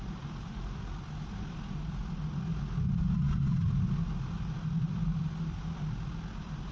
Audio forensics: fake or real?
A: real